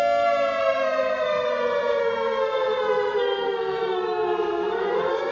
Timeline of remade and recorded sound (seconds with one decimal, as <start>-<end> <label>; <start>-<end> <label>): 0.0-0.6 recorded; 0.6-1.5 remade; 1.5-2.0 recorded; 2.0-5.3 remade